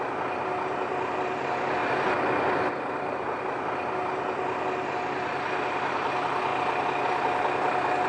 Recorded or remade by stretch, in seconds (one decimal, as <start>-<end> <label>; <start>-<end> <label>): 0.0-8.1 recorded